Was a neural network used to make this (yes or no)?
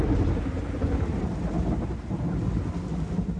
no